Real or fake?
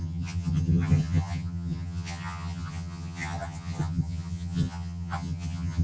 fake